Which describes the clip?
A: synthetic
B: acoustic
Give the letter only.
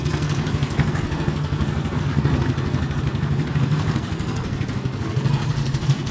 A